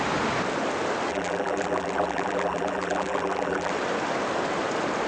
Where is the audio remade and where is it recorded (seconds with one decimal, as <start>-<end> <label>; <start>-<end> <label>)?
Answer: 0.0-1.1 recorded; 1.1-3.7 remade; 3.7-5.1 recorded